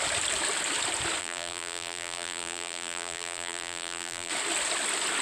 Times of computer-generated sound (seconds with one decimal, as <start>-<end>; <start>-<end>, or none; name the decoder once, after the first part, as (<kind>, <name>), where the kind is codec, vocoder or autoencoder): 1.2-4.3 (vocoder, BigVGAN v2)